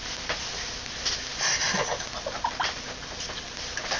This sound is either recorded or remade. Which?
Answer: recorded